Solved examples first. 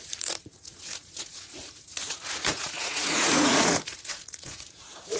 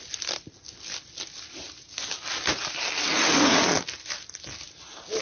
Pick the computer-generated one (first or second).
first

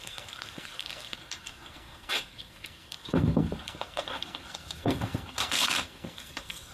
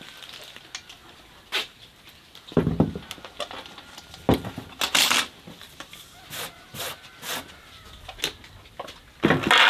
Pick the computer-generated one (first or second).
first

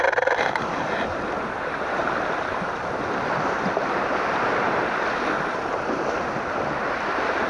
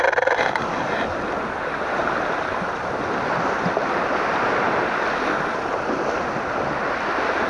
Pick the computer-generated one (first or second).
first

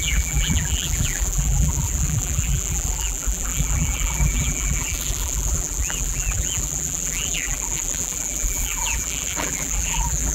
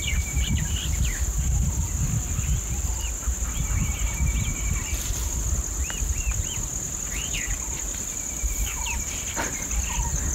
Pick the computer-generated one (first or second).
first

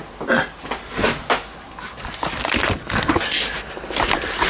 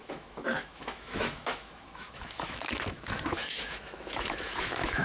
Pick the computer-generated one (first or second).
second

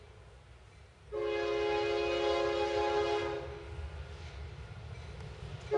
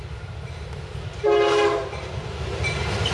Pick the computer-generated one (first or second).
second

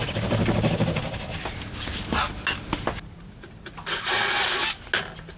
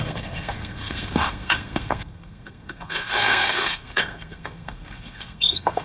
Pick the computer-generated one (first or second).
second